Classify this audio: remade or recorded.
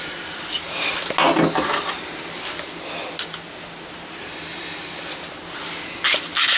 recorded